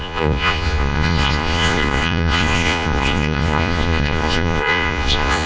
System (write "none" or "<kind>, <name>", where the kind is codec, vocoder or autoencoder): vocoder, Vocos